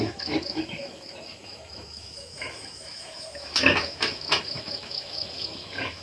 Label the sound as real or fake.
fake